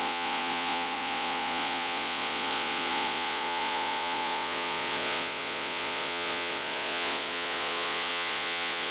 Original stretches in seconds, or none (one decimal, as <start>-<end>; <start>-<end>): none